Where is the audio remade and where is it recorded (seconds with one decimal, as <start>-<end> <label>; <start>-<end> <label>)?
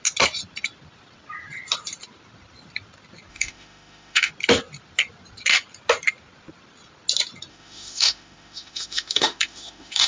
0.0-3.3 recorded; 3.3-4.3 remade; 4.3-7.5 recorded; 7.5-10.1 remade